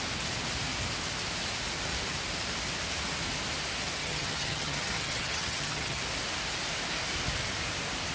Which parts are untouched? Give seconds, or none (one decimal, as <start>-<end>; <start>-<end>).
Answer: 0.0-4.0; 6.0-8.1